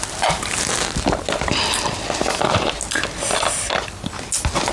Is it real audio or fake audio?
real